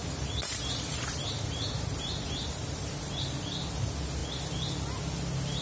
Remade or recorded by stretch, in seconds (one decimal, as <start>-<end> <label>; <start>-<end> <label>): 0.0-3.1 remade; 3.1-5.6 recorded